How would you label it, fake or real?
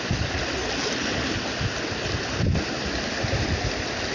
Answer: real